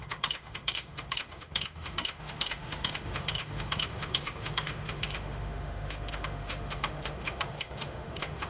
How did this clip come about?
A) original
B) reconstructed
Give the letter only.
B